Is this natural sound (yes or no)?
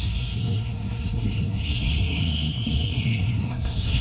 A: no